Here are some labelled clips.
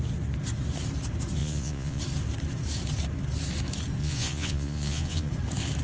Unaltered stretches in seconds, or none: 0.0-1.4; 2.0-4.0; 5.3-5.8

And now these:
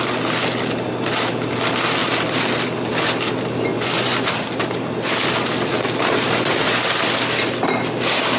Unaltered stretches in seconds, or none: 0.0-3.7; 4.3-8.4

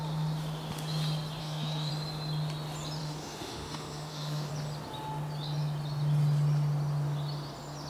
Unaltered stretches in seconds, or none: 0.0-1.4; 1.9-3.0; 4.5-7.9

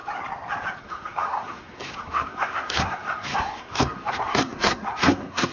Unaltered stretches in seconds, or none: 0.0-0.8

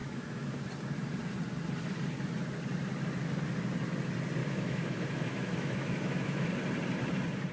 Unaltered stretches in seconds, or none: 0.7-4.4; 6.5-7.5